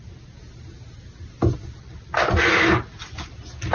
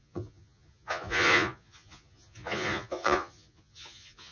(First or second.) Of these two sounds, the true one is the first